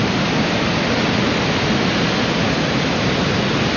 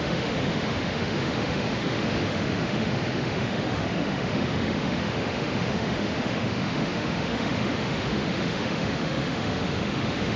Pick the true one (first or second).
first